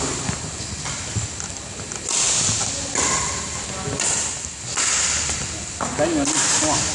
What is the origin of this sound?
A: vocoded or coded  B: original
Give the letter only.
A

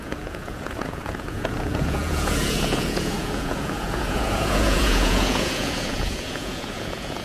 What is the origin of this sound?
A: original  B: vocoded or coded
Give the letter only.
B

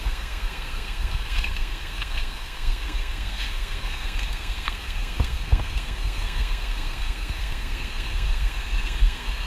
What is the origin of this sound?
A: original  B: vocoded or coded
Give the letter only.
B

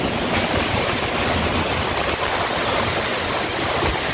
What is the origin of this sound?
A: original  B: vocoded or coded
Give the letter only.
A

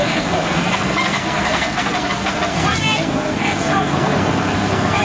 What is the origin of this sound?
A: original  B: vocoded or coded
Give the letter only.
B